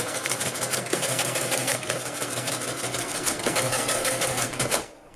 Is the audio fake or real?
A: fake